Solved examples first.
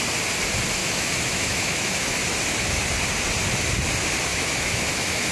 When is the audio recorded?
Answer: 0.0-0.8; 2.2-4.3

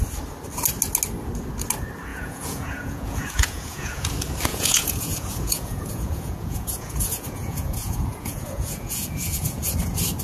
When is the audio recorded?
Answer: 0.0-2.1; 4.1-4.5; 9.7-10.2

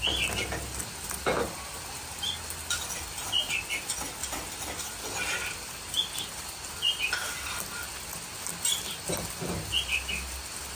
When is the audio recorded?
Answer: 0.0-10.8

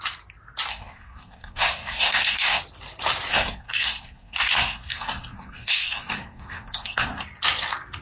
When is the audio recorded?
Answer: 0.0-0.7; 2.6-3.3; 7.2-8.0

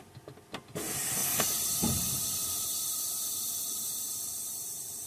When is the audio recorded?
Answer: 0.0-5.1

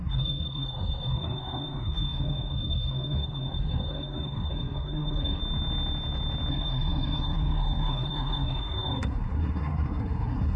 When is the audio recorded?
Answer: 5.4-6.5

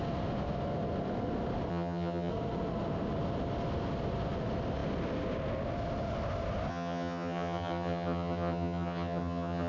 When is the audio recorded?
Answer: 0.0-1.7; 2.3-6.7

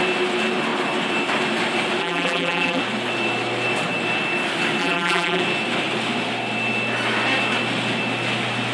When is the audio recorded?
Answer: 0.0-2.0; 2.8-4.8; 5.4-8.7